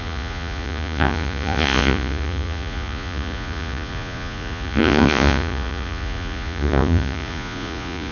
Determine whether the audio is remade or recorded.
remade